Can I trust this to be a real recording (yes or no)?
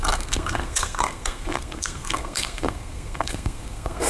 no